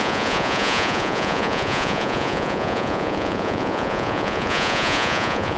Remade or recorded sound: remade